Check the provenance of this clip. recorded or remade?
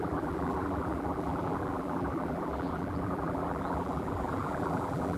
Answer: remade